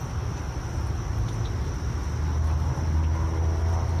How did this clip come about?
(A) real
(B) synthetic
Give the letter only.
A